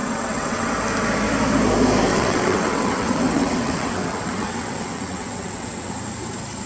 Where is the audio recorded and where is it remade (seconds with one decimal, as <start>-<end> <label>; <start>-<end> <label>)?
0.0-0.7 remade; 0.7-2.1 recorded; 2.1-5.9 remade; 5.9-6.7 recorded